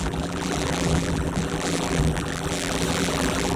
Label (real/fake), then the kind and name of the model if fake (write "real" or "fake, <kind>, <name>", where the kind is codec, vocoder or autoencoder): fake, vocoder, BigVGAN v2